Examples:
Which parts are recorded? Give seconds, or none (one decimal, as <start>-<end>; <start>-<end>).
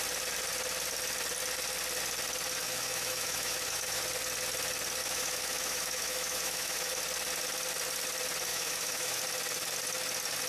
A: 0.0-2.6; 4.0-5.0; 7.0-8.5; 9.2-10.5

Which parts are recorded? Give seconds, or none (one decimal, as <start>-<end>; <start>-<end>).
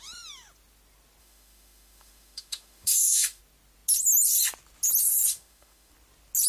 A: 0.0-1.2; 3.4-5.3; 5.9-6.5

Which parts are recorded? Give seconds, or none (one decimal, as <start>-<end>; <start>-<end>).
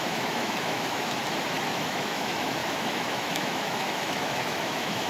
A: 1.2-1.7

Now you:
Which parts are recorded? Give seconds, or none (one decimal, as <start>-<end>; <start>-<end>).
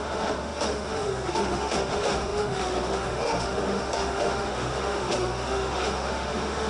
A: none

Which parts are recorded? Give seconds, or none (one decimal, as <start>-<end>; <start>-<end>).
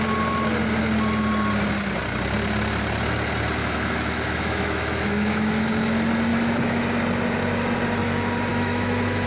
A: 0.0-3.6; 5.7-6.3; 6.8-8.5